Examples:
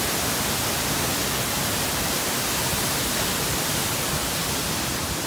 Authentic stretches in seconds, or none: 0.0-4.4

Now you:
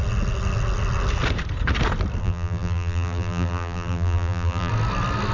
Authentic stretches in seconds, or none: 0.0-2.2; 4.7-5.3

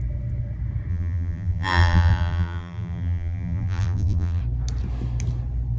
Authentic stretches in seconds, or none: 0.0-0.9; 4.4-5.8

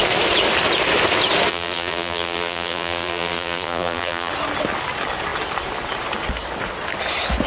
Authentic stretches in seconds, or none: 0.0-1.5; 4.3-7.5

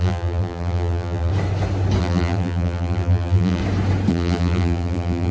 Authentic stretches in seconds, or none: 1.3-2.0; 3.6-4.1

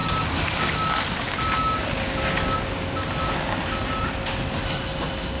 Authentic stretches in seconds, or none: 0.0-5.4